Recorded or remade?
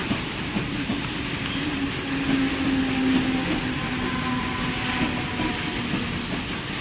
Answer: recorded